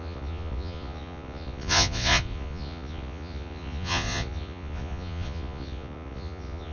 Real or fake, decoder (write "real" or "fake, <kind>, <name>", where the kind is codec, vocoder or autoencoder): fake, vocoder, Vocos